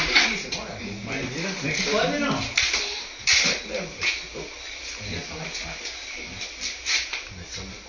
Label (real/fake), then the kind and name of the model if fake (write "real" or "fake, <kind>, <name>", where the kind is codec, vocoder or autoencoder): real